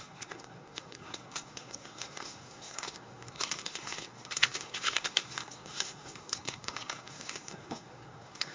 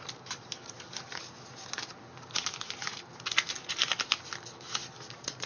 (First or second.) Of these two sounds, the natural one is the second